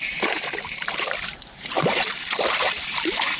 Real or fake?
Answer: fake